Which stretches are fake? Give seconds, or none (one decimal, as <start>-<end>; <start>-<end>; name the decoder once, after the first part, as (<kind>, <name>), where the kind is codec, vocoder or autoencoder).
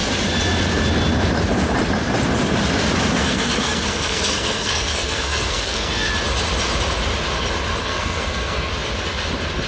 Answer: 3.2-6.1 (codec, SNAC); 7.8-8.7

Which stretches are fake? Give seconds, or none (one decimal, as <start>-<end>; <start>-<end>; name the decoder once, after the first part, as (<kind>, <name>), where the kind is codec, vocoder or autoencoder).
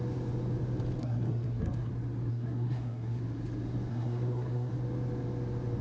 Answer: 1.0-1.9 (codec, SNAC); 2.3-3.2; 3.9-4.7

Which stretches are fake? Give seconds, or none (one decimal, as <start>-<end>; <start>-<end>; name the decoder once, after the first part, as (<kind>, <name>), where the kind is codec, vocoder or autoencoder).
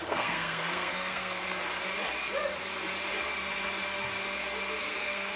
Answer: 0.0-1.6 (codec, SNAC); 4.8-5.4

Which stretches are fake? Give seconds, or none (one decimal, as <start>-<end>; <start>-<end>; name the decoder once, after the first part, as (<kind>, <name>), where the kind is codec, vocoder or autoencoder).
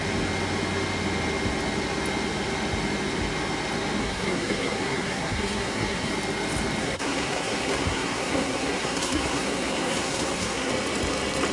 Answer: 4.0-6.1 (codec, SNAC); 6.8-10.7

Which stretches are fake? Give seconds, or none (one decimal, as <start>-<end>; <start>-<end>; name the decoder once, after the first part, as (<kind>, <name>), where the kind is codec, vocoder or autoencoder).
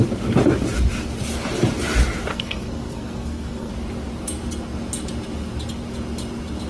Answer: 2.3-3.7 (codec, SNAC)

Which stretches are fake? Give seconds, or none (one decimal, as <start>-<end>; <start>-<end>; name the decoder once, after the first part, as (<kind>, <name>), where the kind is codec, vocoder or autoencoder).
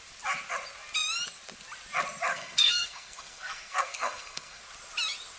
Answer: 2.3-4.6 (codec, SNAC)